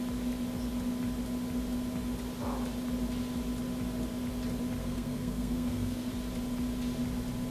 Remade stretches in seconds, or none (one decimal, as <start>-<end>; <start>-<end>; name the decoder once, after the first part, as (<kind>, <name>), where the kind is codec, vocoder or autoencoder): 4.8-6.1 (codec, SNAC)